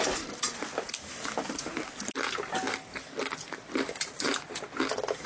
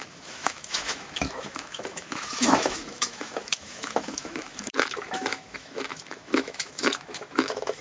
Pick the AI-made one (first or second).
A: second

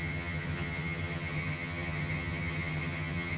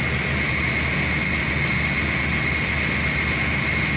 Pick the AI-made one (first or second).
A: first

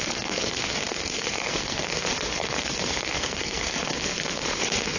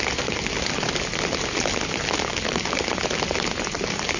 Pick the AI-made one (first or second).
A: first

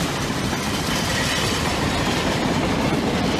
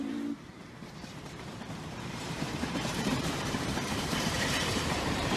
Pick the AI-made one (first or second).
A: second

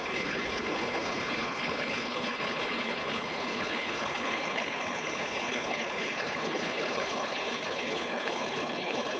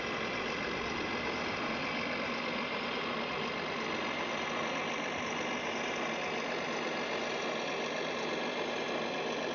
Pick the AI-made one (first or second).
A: first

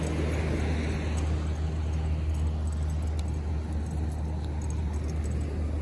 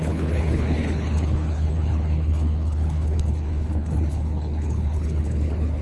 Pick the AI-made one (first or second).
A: second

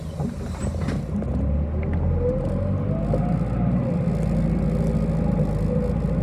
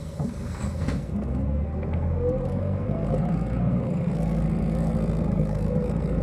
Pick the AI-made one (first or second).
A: second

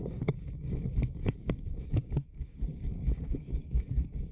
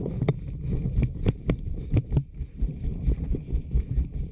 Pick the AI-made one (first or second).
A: first